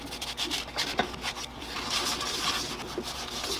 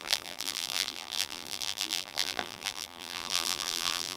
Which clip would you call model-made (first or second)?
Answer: second